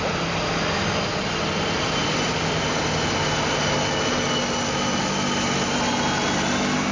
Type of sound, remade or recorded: recorded